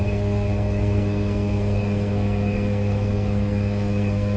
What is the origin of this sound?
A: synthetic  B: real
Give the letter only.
A